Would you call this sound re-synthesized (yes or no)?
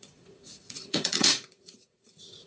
yes